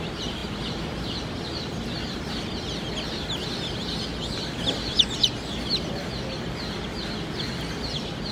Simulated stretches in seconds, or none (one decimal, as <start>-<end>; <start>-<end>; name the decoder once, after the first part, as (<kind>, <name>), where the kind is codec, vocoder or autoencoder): none

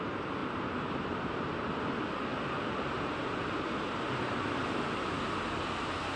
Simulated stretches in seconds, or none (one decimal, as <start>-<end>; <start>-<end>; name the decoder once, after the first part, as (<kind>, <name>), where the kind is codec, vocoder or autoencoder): 0.4-1.7 (vocoder, BigVGAN v2); 2.3-4.0

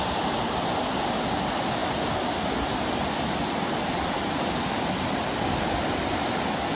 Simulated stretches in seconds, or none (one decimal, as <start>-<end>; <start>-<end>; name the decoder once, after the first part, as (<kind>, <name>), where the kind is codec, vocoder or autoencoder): none

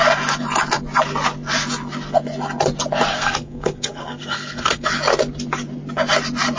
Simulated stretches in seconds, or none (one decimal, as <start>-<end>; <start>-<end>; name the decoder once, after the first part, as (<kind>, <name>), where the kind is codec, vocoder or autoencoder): 3.1-4.9 (codec, SNAC)

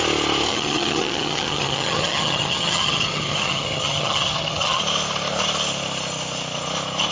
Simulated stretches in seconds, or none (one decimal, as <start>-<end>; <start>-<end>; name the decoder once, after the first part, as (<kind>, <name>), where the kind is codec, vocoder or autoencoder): 0.5-4.8 (vocoder, HiFi-GAN)